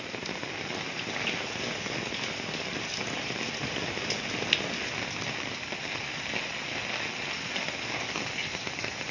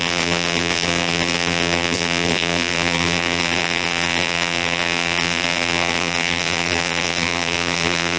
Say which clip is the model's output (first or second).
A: second